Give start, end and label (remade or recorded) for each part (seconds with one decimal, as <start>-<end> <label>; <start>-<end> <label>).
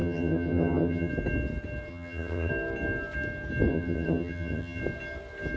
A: 0.0-1.1 remade; 1.1-1.9 recorded; 1.9-2.5 remade; 2.5-3.7 recorded; 3.7-4.8 remade; 4.8-5.6 recorded